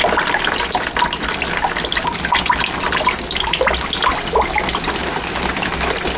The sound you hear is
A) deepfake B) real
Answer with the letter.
B